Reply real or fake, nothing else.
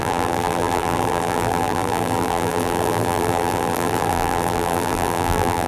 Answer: fake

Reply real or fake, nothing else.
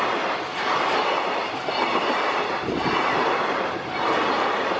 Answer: real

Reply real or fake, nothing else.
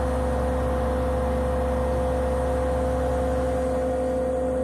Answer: real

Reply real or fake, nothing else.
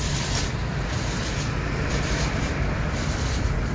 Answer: real